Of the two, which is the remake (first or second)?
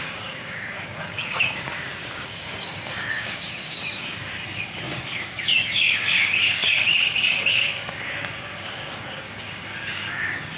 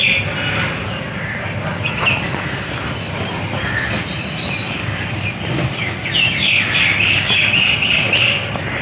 first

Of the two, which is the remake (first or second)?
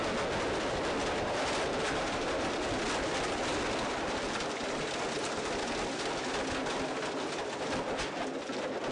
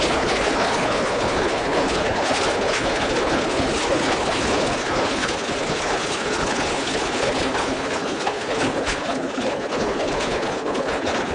second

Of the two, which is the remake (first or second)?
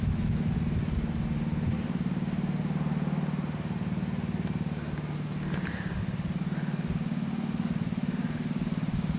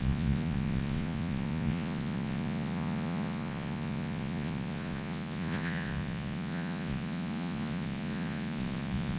second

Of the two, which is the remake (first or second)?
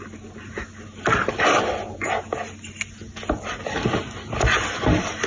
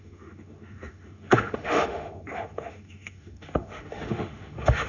second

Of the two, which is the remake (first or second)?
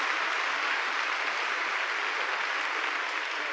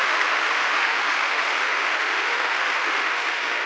second